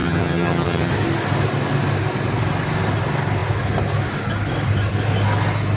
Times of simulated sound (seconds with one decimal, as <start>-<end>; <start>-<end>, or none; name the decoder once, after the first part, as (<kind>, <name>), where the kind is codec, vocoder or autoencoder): 0.0-0.9 (vocoder, HiFi-GAN)